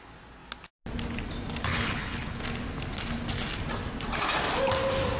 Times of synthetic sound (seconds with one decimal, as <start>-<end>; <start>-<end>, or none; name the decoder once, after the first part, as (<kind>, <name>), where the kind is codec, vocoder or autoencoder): 1.7-2.4 (codec, HILCodec)